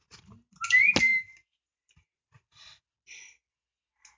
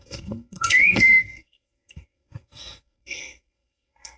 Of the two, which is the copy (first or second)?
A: second